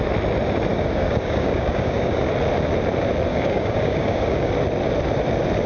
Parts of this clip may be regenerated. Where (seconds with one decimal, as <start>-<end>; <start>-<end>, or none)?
0.7-2.3; 3.3-4.5